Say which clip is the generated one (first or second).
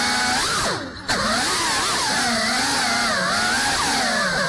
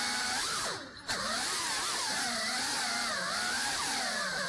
second